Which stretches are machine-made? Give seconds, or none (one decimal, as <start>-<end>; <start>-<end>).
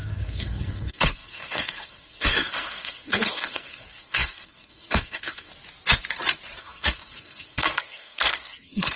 0.0-5.5; 6.6-9.0